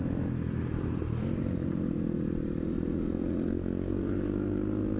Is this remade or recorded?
recorded